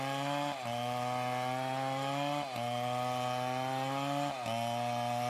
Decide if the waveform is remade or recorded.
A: recorded